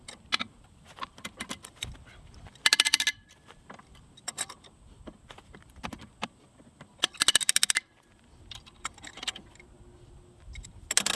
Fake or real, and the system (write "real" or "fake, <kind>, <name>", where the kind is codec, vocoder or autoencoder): real